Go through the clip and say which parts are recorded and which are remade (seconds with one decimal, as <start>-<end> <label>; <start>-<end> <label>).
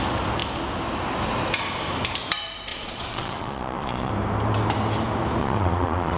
0.0-2.7 recorded; 2.7-4.1 remade; 4.1-5.4 recorded; 5.4-6.2 remade